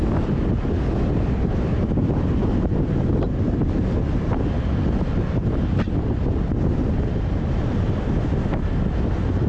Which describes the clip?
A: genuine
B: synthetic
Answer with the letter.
A